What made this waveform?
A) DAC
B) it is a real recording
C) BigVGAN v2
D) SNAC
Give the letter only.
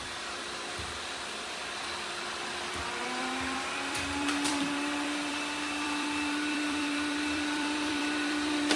C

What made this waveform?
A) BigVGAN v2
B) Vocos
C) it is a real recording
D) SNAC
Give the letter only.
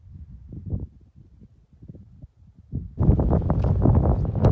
C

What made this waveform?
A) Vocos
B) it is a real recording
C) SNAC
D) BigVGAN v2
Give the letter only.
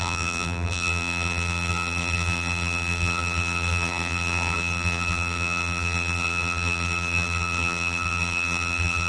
D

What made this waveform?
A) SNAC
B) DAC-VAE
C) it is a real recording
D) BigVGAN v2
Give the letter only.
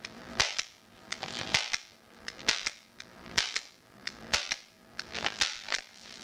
D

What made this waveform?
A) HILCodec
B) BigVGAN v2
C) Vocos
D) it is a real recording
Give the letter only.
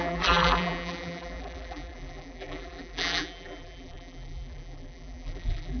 B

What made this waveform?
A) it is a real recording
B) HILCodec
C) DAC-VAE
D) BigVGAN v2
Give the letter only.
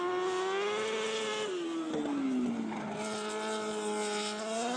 A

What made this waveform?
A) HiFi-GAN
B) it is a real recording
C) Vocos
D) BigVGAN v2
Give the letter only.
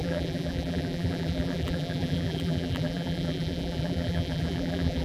D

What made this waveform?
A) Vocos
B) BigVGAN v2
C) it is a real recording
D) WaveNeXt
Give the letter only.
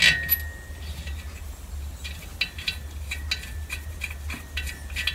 C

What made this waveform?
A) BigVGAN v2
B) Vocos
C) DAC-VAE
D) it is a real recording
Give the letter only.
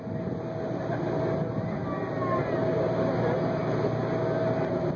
D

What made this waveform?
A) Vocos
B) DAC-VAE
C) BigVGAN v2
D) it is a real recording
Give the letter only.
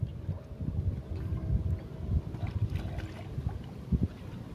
D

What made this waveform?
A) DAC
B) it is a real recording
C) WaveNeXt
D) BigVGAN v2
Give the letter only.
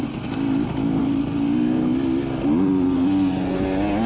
B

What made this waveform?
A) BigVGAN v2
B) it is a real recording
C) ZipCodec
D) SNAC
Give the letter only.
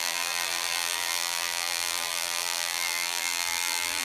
A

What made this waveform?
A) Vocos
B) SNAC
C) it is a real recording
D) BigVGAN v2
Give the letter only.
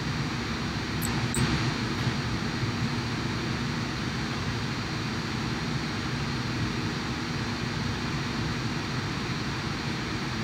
C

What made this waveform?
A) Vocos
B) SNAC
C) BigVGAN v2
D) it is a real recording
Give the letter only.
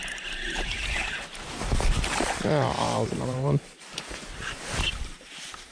C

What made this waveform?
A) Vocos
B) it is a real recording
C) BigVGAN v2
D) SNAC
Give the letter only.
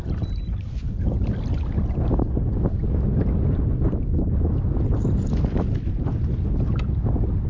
B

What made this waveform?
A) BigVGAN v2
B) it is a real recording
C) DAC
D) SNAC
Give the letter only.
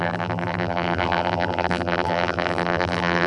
A